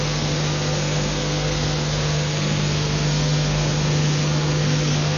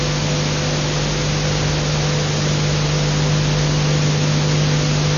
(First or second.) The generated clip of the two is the first